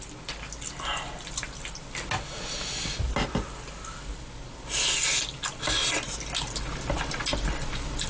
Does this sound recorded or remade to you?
recorded